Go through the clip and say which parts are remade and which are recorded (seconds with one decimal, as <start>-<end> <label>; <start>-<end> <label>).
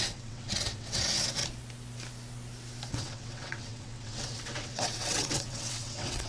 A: 0.0-1.4 remade; 1.4-2.9 recorded; 2.9-6.3 remade